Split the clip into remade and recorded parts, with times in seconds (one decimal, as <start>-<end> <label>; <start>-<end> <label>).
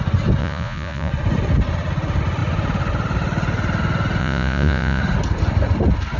0.0-0.4 recorded; 0.4-1.1 remade; 1.1-4.2 recorded; 4.2-5.0 remade; 5.0-6.2 recorded